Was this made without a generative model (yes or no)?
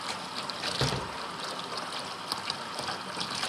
yes